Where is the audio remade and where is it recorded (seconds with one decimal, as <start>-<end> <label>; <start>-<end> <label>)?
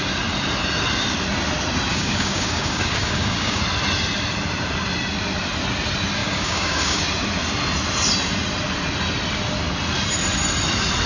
0.0-1.9 recorded; 1.9-3.6 remade; 3.6-6.2 recorded; 6.2-7.0 remade; 7.0-11.1 recorded